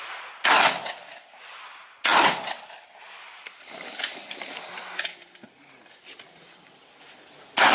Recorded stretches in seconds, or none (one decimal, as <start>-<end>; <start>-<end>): 0.0-7.7